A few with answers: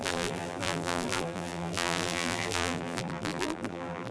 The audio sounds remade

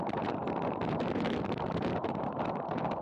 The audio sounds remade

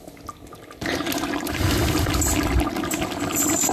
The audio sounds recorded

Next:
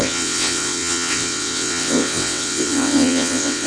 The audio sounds remade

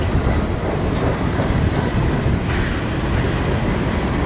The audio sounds recorded